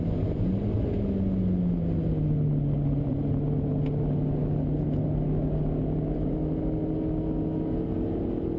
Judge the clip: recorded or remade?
recorded